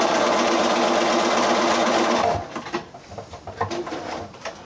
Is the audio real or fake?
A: real